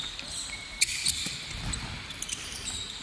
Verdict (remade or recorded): recorded